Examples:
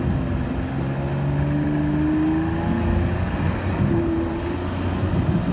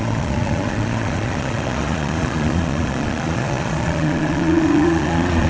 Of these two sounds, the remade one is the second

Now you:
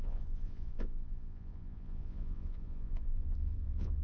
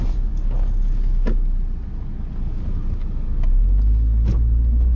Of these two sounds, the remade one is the first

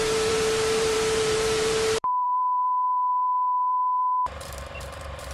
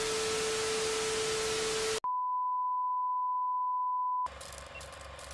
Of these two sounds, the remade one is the first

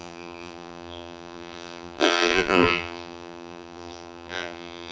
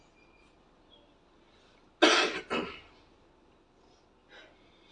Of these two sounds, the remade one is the first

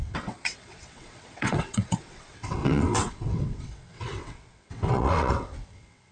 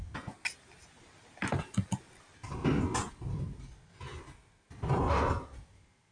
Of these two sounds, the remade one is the first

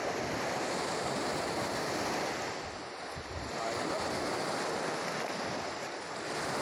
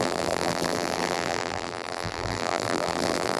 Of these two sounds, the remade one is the second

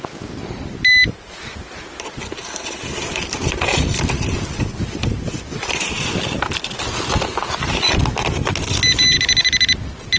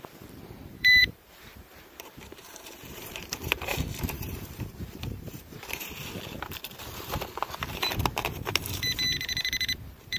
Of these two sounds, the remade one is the second